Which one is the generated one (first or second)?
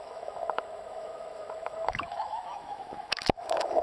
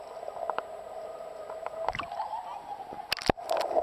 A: first